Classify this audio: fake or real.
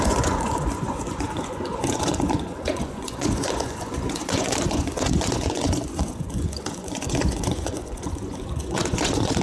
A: fake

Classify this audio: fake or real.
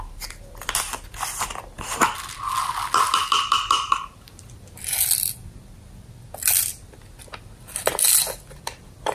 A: real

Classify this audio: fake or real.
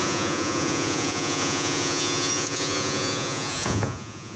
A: fake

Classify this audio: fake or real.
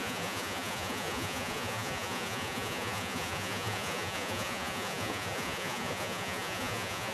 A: fake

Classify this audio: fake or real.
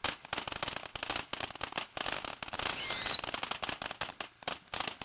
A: real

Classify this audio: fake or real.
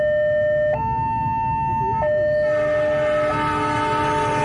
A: real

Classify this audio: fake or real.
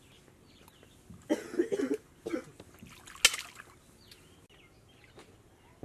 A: real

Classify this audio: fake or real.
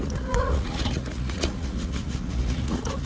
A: fake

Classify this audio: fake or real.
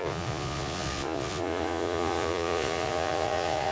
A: fake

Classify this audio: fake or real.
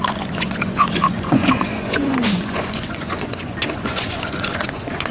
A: fake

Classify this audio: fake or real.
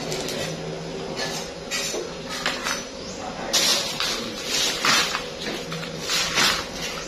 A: real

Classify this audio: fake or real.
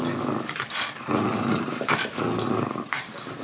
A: real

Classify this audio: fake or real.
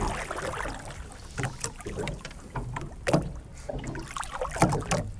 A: real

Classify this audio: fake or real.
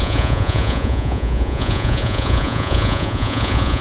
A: fake